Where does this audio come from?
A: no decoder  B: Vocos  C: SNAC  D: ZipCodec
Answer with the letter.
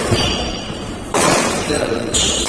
B